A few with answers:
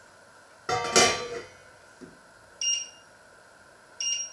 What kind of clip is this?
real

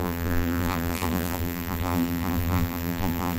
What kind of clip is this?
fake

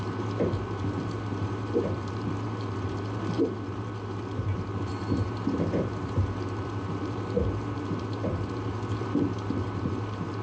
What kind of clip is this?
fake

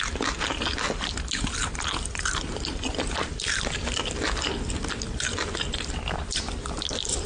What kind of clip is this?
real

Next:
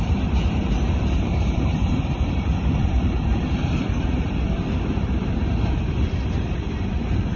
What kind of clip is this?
fake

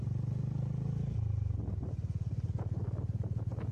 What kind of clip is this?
real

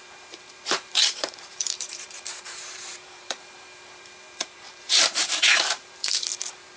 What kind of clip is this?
fake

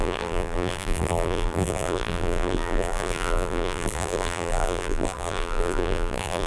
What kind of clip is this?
fake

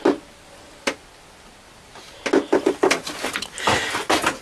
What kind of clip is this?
real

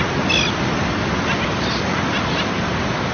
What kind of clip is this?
real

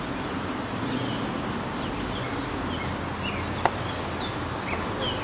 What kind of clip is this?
real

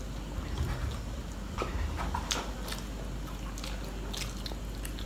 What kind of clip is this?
real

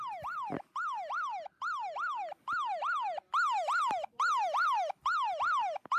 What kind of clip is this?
real